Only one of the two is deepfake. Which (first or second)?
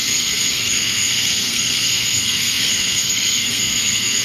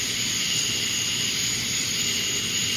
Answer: first